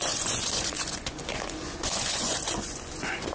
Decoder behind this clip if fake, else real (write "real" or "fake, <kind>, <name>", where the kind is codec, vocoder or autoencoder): fake, vocoder, Vocos